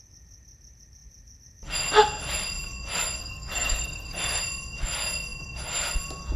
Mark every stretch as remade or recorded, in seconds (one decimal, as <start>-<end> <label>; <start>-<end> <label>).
0.0-3.2 recorded; 3.2-4.4 remade; 4.4-6.4 recorded